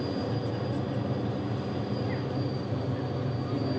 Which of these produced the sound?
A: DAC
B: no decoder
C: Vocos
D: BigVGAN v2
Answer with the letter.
B